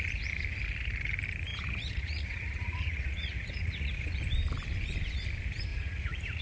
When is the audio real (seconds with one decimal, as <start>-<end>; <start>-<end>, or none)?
0.0-1.5; 4.1-5.7